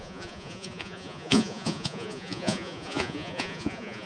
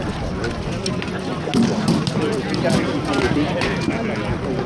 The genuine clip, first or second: second